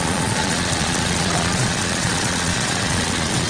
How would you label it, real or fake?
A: fake